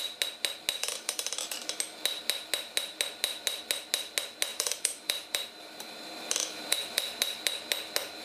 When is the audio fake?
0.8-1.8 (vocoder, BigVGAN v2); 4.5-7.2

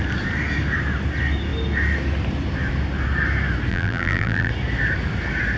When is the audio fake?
3.7-4.5 (vocoder, BigVGAN v2)